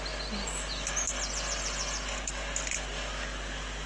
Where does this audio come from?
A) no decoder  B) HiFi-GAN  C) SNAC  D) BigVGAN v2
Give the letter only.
A